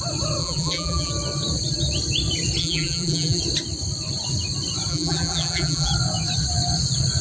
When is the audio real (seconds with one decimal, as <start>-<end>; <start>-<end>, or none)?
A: 0.0-0.4; 1.1-2.6; 3.4-4.9; 5.9-7.2